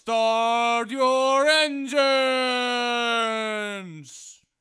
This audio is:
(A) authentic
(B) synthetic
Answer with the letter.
B